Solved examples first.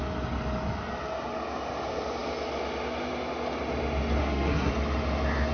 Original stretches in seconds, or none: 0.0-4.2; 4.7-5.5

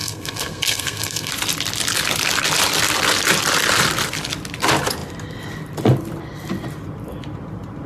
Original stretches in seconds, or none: 1.3-7.9

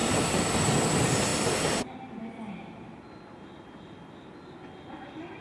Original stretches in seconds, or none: 0.0-5.4

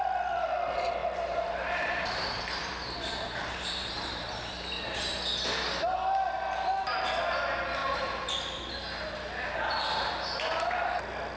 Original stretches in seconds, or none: 0.0-1.0; 5.0-7.8; 10.1-11.4

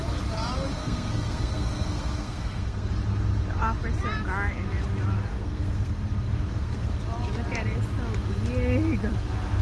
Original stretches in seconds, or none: 0.0-0.8; 2.9-5.3; 5.9-6.5; 7.0-9.6